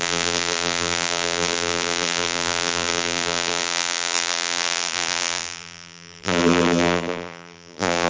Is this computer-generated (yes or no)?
yes